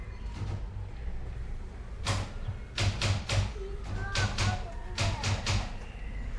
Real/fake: real